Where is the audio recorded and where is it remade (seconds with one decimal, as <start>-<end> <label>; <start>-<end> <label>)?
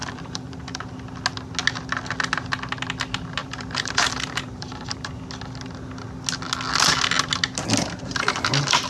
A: 0.0-0.9 remade; 0.9-3.4 recorded; 3.4-5.2 remade; 5.2-8.9 recorded